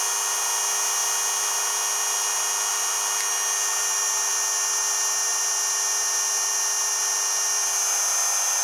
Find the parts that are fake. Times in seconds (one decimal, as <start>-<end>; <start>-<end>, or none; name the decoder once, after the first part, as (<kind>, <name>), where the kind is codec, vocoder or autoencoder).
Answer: none